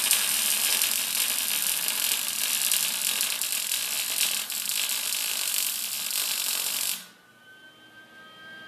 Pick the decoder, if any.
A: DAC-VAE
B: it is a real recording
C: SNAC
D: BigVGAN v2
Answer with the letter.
B